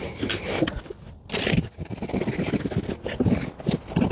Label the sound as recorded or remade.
recorded